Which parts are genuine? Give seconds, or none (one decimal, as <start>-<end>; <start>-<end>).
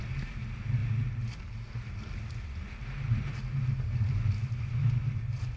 0.0-5.6